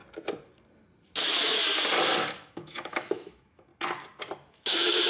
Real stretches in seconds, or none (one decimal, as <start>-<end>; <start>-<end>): 0.0-1.2; 1.6-2.3; 3.7-4.5